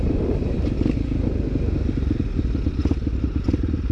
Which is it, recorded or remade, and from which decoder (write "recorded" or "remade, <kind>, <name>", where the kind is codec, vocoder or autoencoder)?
recorded